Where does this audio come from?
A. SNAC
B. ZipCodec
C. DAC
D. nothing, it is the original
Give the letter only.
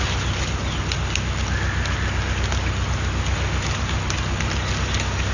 D